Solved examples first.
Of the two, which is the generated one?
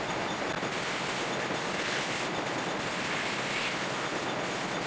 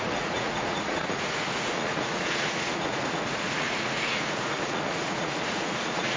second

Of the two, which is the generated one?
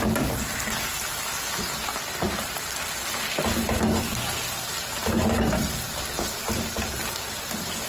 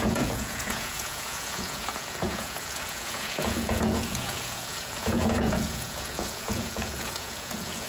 second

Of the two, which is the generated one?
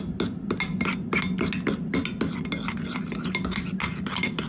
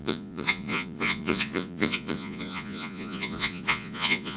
second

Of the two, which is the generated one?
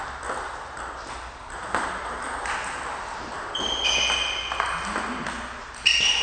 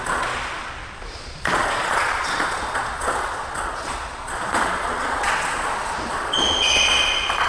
second